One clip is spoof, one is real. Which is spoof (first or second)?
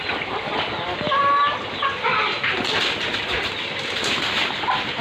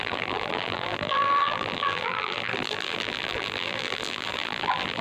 second